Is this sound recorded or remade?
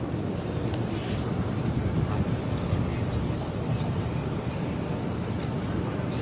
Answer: recorded